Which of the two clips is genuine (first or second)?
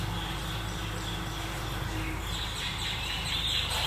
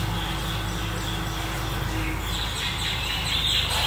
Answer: second